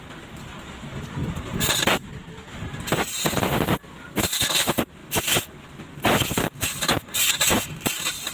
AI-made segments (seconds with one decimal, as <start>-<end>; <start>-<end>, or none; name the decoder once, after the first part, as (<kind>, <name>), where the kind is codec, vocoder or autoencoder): 1.2-2.1 (vocoder, BigVGAN v2)